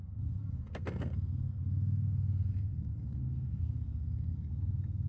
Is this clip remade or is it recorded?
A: remade